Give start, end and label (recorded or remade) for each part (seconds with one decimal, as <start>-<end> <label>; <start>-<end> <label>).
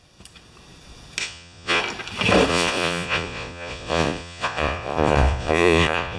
0.0-1.2 recorded; 1.2-1.8 remade; 1.8-2.5 recorded; 2.5-6.2 remade